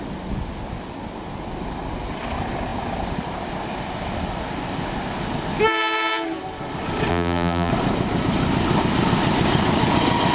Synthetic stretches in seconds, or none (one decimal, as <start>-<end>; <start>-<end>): 7.1-7.7

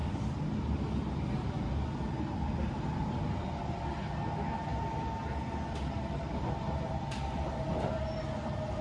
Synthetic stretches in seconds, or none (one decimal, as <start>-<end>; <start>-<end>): 4.7-8.0

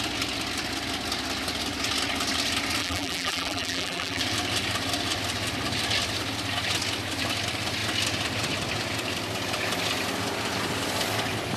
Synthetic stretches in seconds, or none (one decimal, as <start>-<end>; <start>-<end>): 2.8-4.2

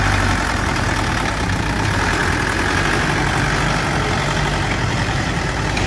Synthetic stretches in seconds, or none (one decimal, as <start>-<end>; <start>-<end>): 0.0-2.2; 4.9-5.9

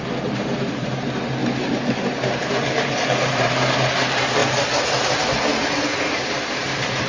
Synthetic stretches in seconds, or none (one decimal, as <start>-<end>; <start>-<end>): 0.0-1.4; 2.1-4.4; 6.1-7.1

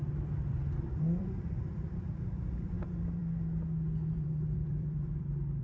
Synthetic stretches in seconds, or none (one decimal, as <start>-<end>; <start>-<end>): 0.0-3.2; 4.1-5.6

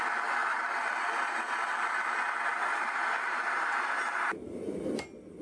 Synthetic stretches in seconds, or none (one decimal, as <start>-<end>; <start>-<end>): none

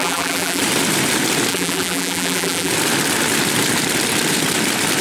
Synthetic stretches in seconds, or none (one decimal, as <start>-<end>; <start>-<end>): 0.0-0.6; 1.5-2.7